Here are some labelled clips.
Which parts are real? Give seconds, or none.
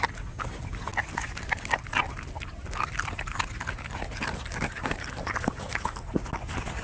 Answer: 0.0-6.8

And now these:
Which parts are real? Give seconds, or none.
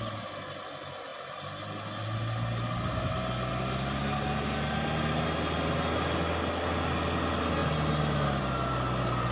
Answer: 0.0-9.3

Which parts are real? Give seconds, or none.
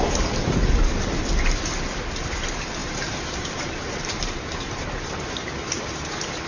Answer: 0.0-2.8; 5.8-6.5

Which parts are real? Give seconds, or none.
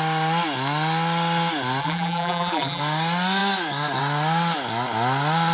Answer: 0.0-1.8; 2.8-5.5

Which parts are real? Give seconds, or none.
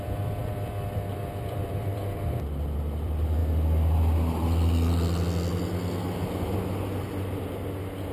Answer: 3.4-8.1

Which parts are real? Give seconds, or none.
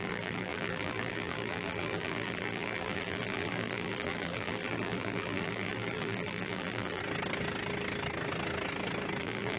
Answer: 7.0-9.2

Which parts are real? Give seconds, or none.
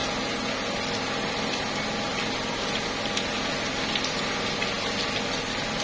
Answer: 0.0-5.8